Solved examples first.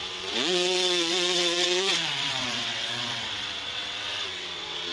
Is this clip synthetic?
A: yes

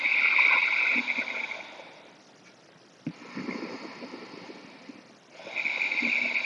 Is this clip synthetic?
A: no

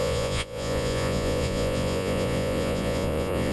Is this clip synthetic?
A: yes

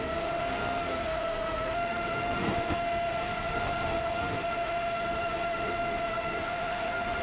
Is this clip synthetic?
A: yes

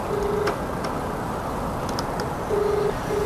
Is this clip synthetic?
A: no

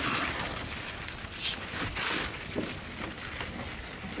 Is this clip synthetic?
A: no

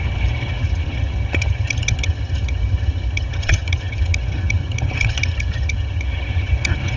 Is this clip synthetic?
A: yes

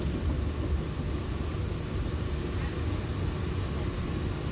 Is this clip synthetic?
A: no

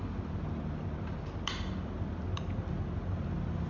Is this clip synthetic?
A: no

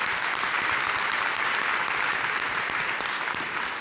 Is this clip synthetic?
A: no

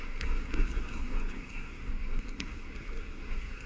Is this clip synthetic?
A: yes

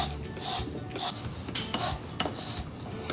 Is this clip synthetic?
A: no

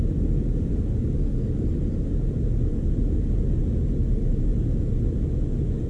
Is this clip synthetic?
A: no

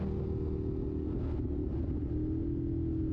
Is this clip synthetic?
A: no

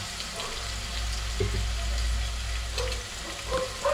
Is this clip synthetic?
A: no